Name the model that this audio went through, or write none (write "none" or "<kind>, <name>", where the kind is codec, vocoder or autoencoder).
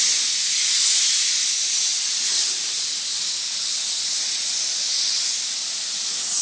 none